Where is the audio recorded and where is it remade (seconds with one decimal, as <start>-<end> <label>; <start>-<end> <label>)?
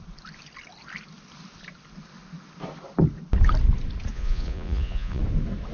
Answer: 0.0-4.1 recorded; 4.1-5.2 remade; 5.2-5.7 recorded